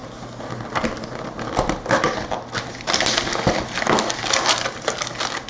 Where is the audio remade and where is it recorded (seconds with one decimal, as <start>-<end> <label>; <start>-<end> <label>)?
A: 0.0-5.5 recorded